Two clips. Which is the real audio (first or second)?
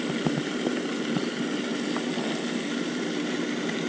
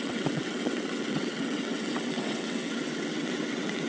first